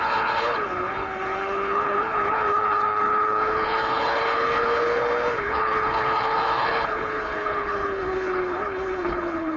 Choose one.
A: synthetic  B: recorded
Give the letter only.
A